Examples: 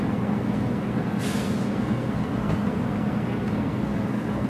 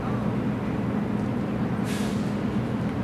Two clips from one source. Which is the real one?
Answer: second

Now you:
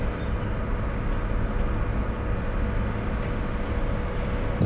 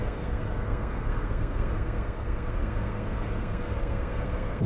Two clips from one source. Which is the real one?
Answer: first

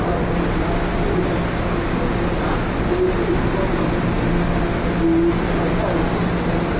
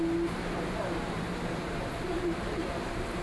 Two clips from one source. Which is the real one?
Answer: first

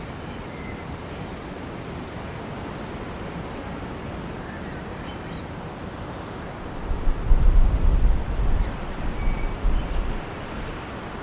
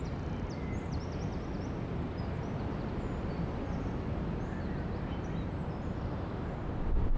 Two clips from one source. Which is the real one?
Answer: second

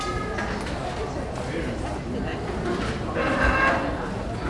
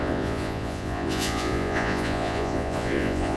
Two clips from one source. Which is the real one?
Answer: first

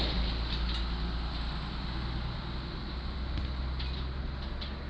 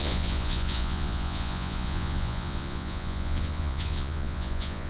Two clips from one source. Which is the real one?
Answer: first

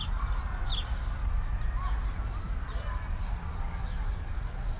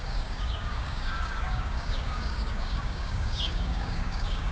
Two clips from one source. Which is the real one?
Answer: first